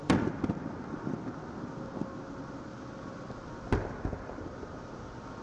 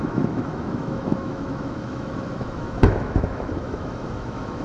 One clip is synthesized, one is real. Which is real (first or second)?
first